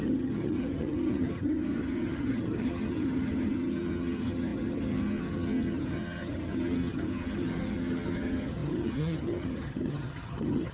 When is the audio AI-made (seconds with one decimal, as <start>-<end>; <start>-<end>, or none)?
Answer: 0.0-10.7